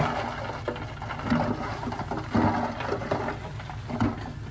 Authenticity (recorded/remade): recorded